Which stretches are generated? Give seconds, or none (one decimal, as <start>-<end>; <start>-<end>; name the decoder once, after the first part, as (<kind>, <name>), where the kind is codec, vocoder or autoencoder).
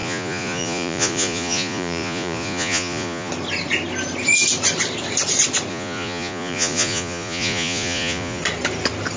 0.0-3.3 (vocoder, Vocos); 5.7-8.4